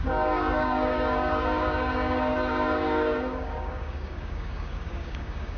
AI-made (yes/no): yes